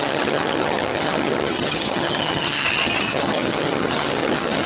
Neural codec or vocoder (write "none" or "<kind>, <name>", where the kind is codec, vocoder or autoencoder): vocoder, HiFi-GAN